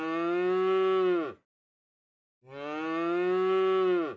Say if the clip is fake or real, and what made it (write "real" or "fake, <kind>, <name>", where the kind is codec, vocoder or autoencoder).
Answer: real